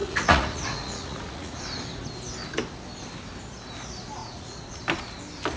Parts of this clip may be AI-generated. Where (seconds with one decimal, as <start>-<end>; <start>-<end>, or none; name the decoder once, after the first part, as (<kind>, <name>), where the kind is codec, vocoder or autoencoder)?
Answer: 0.0-1.6 (vocoder, Vocos); 4.2-4.8